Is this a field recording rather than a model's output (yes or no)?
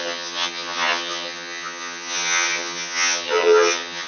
no